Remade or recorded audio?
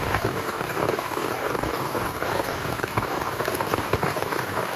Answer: remade